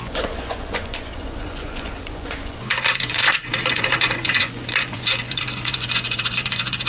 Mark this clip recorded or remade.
remade